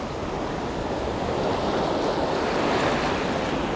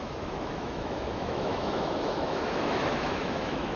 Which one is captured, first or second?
first